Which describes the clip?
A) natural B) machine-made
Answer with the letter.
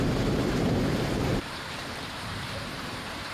B